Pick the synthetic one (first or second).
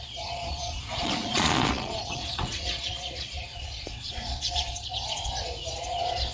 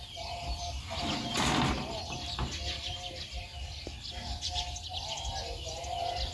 first